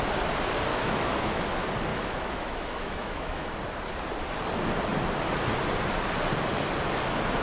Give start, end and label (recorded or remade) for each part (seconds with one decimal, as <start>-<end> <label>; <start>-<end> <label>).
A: 0.0-0.7 recorded; 0.7-1.4 remade; 1.4-1.9 recorded; 1.9-3.5 remade; 3.5-7.4 recorded